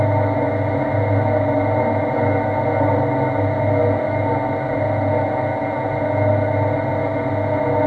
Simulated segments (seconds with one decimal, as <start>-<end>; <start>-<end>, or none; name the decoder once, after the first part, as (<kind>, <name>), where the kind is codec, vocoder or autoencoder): none